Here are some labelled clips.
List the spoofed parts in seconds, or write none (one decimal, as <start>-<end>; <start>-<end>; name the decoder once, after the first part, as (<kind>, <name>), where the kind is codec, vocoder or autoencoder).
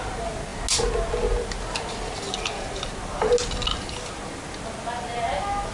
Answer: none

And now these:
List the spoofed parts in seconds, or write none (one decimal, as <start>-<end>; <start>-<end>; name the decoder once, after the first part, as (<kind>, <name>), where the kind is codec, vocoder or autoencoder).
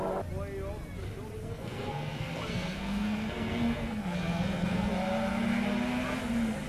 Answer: 1.4-4.9 (codec, SNAC)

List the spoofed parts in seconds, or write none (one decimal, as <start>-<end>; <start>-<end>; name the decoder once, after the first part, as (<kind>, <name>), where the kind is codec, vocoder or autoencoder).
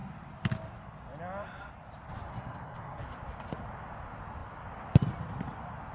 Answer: 2.3-3.0 (codec, SNAC)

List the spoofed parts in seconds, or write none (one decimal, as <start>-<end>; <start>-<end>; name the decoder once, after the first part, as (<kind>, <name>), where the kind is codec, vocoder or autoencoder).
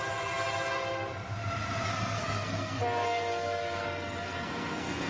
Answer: 1.9-5.1 (codec, SNAC)